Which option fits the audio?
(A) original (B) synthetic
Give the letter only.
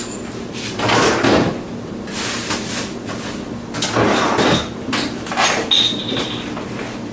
A